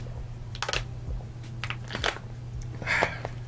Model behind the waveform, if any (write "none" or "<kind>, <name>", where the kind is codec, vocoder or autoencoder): none